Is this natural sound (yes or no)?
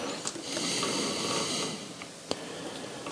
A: yes